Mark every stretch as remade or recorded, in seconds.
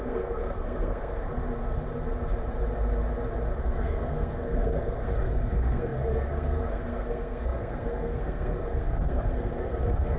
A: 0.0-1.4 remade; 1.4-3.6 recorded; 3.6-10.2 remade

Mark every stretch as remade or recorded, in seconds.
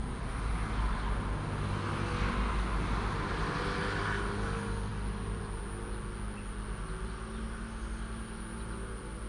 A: 0.0-9.3 recorded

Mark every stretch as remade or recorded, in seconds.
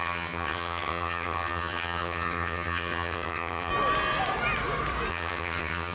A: 0.0-3.7 remade; 3.7-5.1 recorded; 5.1-5.9 remade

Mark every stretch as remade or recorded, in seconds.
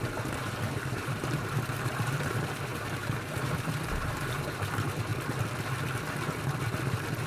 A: 0.0-5.1 remade; 5.1-7.3 recorded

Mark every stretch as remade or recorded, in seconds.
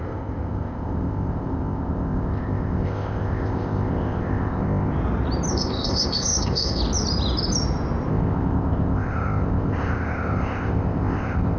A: 0.0-4.9 remade; 4.9-5.5 recorded; 5.5-6.8 remade; 6.8-8.1 recorded; 8.1-11.6 remade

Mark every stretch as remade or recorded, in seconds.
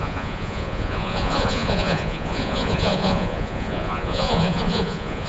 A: 0.0-5.3 remade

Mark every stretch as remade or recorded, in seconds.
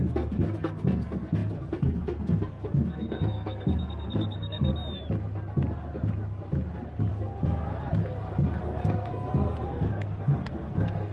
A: 0.0-4.7 remade; 4.7-7.1 recorded; 7.1-7.9 remade; 7.9-8.6 recorded; 8.6-11.1 remade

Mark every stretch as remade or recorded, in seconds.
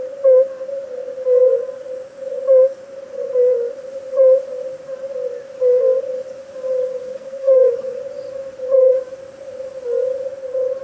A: 0.0-7.0 recorded; 7.0-8.0 remade; 8.0-10.8 recorded